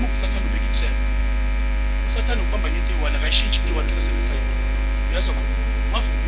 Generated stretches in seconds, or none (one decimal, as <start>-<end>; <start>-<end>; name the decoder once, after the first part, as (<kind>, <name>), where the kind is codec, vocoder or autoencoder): 0.0-6.3 (vocoder, BigVGAN v2)